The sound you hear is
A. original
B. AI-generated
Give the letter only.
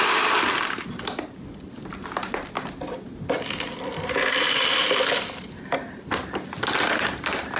A